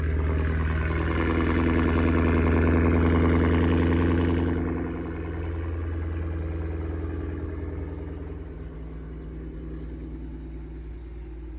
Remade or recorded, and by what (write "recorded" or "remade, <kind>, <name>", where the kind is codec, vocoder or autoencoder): recorded